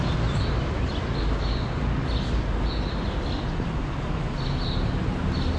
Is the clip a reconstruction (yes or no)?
no